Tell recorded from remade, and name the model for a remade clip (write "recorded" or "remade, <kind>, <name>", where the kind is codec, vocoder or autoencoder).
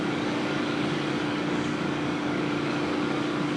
remade, codec, DAC